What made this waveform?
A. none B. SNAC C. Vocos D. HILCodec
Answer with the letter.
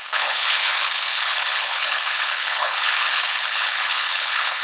D